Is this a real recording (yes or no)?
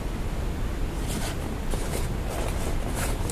yes